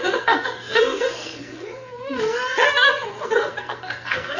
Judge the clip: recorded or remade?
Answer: remade